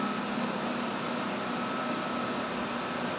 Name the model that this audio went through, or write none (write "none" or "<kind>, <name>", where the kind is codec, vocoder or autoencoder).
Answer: none